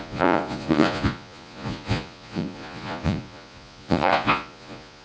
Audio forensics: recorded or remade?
remade